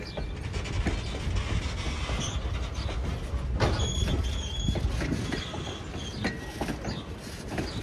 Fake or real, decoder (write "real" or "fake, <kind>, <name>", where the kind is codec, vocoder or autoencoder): real